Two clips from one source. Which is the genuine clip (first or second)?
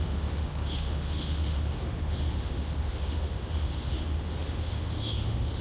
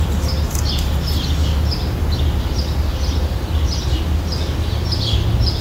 second